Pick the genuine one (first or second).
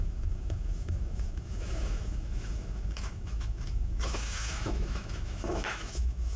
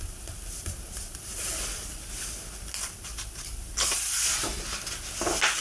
second